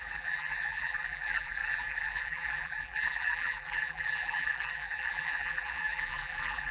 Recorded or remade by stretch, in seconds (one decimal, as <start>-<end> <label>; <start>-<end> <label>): 0.0-6.7 remade